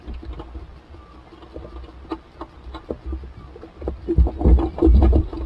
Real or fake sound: real